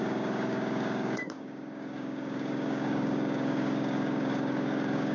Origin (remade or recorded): remade